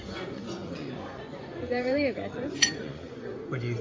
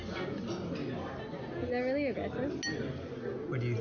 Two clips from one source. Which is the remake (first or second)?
first